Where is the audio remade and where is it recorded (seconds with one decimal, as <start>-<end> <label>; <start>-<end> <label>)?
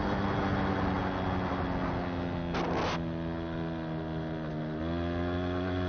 0.0-5.9 recorded